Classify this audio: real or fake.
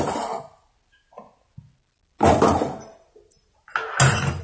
real